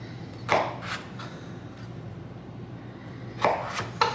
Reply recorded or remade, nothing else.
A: recorded